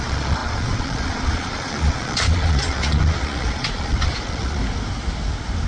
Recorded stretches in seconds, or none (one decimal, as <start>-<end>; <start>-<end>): 4.6-5.7